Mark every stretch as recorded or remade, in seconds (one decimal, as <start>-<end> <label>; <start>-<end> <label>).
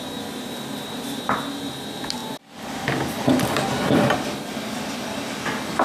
0.0-2.2 remade; 2.2-5.8 recorded